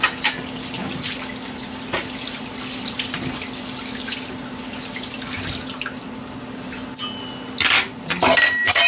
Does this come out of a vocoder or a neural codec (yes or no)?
no